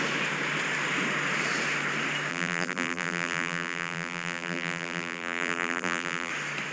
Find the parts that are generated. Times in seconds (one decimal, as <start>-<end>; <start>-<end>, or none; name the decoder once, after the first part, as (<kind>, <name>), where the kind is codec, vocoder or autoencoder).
2.3-6.3 (vocoder, BigVGAN v2)